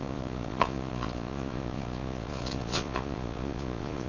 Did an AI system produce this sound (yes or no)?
yes